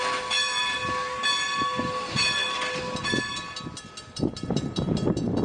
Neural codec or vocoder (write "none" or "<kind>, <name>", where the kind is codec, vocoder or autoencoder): none